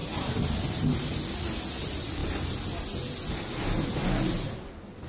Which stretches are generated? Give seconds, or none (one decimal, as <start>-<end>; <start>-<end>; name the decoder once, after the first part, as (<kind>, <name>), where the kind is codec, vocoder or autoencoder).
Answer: none